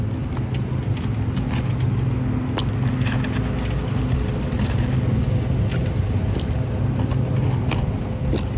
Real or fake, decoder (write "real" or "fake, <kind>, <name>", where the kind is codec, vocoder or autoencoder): real